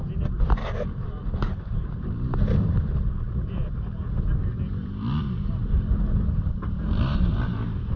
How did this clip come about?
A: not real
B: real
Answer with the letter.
B